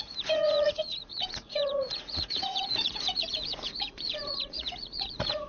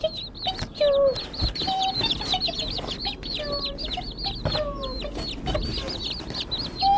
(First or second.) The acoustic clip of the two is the second